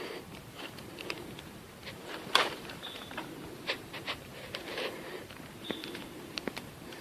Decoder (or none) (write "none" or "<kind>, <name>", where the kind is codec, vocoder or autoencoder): vocoder, BigVGAN v2